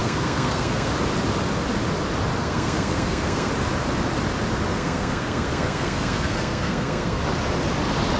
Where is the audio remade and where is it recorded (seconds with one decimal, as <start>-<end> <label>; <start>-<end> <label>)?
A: 0.0-0.9 remade; 0.9-2.4 recorded; 2.4-3.5 remade; 3.5-4.7 recorded; 4.7-7.2 remade; 7.2-8.2 recorded